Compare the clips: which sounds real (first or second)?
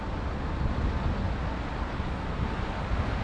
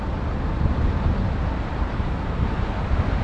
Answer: first